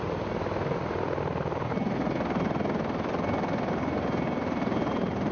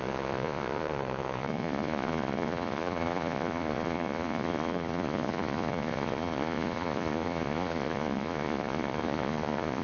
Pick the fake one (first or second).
second